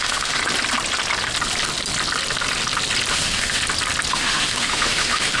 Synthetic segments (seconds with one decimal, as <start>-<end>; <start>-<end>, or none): 0.0-0.4; 3.1-3.6; 4.1-5.4